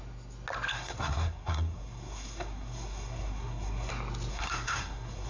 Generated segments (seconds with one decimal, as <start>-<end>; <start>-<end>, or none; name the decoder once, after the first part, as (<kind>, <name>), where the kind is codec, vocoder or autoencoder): 0.7-3.9 (codec, SNAC); 4.3-5.3